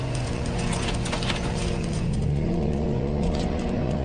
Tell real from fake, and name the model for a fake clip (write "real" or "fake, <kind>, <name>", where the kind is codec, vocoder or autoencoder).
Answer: fake, vocoder, Vocos